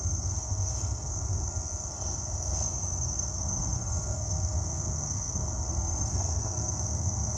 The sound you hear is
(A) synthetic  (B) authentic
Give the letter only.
A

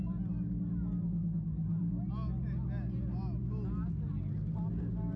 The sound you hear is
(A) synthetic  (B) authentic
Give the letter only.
B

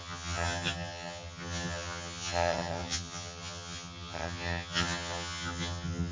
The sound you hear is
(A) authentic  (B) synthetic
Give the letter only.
B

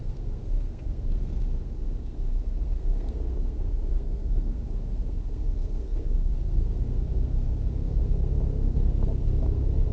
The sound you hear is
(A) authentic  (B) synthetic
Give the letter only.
B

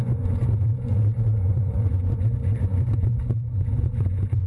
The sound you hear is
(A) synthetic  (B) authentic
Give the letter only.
A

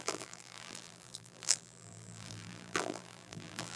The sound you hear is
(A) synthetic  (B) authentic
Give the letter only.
A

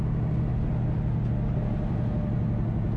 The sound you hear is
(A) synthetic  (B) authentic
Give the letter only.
B